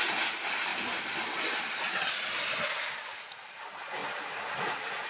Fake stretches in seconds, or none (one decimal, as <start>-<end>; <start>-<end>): 0.7-2.6; 4.0-5.1

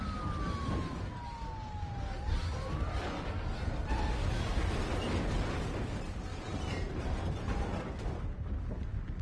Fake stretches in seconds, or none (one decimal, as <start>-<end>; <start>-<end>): 6.3-8.5

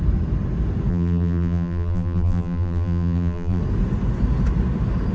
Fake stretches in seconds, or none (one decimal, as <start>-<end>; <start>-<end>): 0.9-3.6

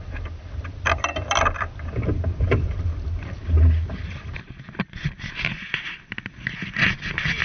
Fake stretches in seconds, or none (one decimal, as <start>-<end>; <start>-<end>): none

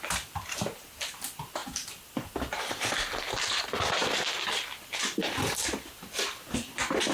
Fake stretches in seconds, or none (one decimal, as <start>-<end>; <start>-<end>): none

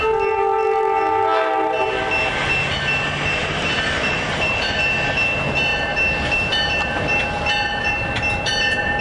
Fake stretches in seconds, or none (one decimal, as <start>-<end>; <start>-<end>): 3.4-4.5

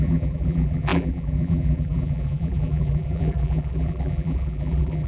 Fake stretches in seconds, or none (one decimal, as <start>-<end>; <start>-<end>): 0.0-5.1

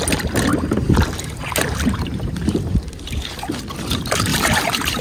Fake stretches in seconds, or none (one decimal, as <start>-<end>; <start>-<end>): 0.5-3.5; 4.3-5.0